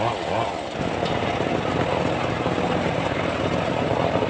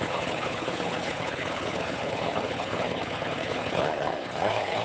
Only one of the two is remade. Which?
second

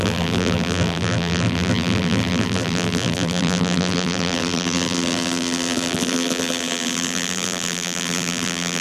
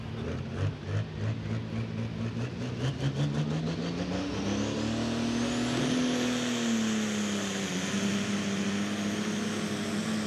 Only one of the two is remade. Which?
first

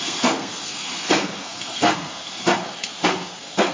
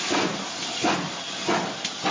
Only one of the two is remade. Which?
first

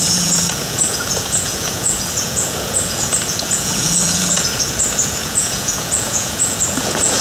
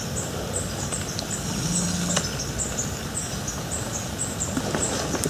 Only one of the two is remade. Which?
first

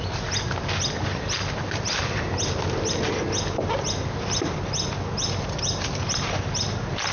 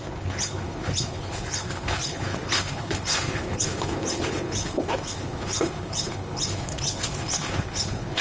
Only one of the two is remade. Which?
second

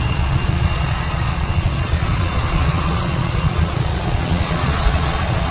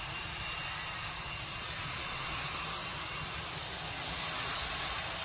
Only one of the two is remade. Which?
first